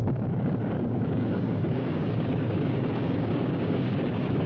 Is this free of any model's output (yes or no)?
no